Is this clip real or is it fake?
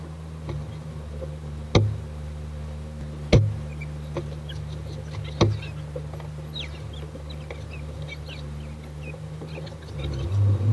real